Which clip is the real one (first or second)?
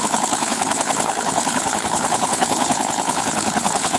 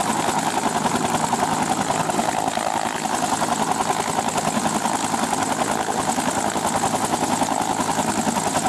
second